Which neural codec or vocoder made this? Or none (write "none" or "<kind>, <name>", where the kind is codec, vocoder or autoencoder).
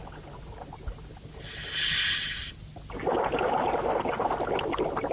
none